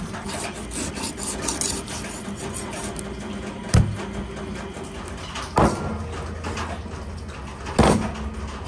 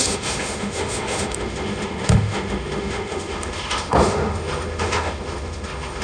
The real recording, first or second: first